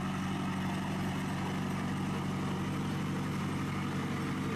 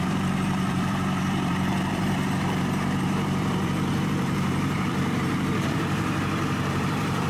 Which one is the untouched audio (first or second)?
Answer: first